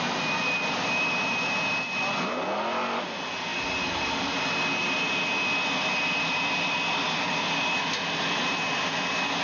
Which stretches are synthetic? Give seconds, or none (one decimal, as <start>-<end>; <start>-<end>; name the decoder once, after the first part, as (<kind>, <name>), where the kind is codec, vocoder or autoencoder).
none